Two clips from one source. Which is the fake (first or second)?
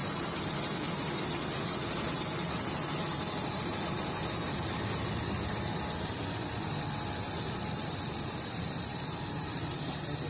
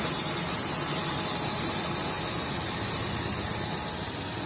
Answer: first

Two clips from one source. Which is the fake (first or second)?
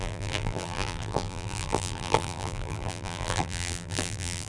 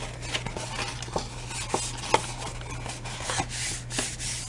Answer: first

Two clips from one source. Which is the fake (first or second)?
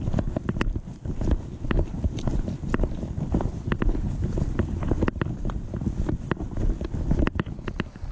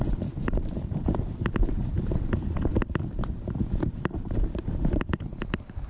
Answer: second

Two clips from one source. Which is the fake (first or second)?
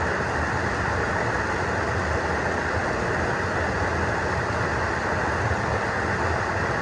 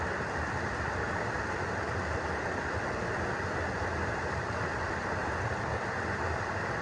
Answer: second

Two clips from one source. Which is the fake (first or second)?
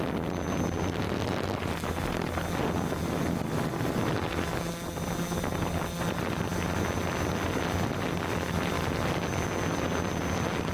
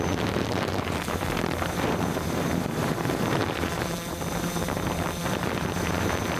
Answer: second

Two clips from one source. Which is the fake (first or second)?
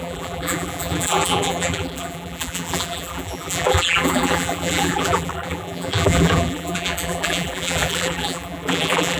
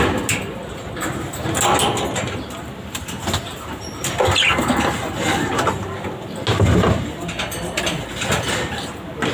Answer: first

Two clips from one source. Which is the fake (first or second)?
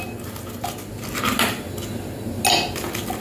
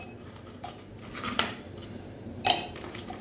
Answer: second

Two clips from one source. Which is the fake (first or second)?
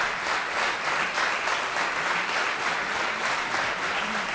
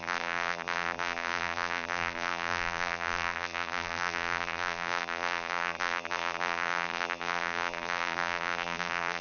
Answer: second